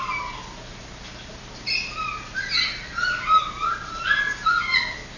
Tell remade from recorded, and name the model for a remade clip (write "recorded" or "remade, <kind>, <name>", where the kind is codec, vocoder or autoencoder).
recorded